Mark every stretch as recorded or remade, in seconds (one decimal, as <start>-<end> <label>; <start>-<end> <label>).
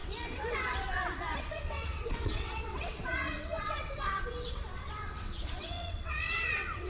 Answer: 0.0-6.9 remade